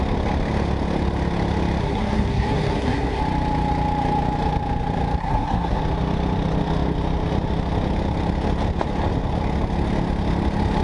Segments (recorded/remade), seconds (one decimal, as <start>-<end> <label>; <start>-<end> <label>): 0.0-1.8 recorded; 1.8-3.2 remade; 3.2-5.2 recorded; 5.2-5.8 remade; 5.8-10.8 recorded